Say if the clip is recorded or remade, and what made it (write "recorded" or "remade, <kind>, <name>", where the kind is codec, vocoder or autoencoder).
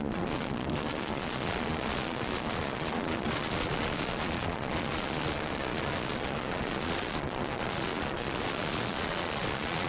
remade, vocoder, Vocos